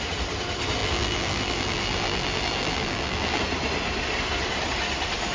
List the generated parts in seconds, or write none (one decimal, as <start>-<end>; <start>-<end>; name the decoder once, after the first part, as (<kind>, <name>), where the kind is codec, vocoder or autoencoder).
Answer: 0.8-3.4 (vocoder, BigVGAN v2)